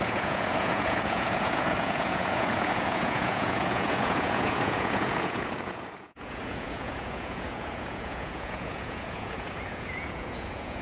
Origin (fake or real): fake